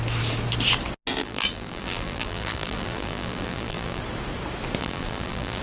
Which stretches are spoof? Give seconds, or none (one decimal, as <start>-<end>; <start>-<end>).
1.2-4.0; 4.8-5.6